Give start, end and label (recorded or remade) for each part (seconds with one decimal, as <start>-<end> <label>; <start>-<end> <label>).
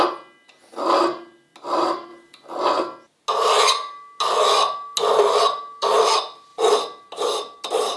0.0-8.0 recorded